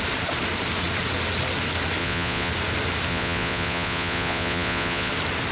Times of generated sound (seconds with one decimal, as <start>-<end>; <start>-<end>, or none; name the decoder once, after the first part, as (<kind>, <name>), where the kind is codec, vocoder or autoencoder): 2.0-2.5 (vocoder, Vocos); 3.1-5.1